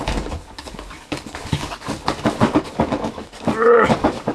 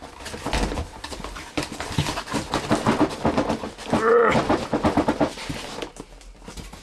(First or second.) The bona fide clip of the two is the second